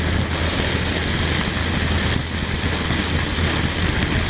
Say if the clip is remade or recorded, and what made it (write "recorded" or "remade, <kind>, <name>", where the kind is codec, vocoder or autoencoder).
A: recorded